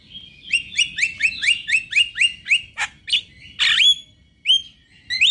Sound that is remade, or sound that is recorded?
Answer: recorded